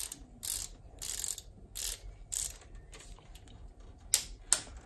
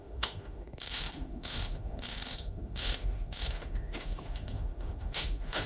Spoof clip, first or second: second